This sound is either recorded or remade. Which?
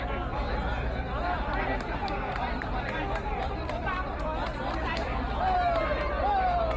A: remade